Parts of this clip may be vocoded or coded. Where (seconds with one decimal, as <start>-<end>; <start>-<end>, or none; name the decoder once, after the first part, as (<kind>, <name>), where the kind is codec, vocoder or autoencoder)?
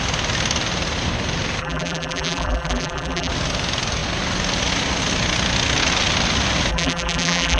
1.6-3.3 (vocoder, BigVGAN v2); 6.7-7.6